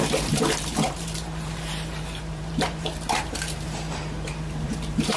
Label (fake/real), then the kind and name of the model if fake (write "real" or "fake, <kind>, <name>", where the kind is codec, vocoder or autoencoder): fake, vocoder, BigVGAN v2